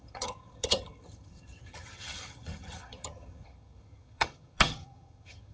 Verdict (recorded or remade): remade